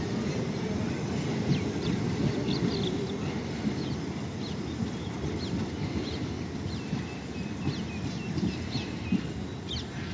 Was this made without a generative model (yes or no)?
yes